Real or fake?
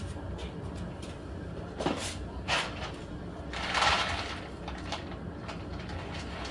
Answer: real